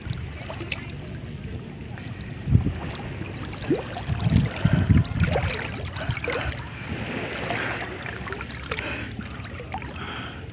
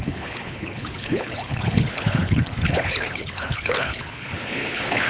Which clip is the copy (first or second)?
second